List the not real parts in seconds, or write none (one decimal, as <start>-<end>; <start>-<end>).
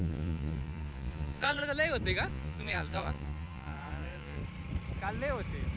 0.0-1.6; 2.3-4.4